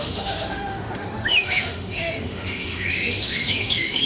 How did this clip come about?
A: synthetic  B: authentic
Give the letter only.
A